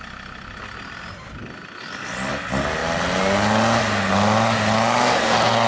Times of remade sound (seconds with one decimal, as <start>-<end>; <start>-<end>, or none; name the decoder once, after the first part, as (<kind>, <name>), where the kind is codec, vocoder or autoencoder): none